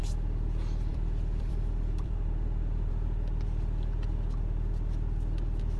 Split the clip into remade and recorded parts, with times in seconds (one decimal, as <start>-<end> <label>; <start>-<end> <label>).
0.0-0.9 recorded; 0.9-2.9 remade; 2.9-5.8 recorded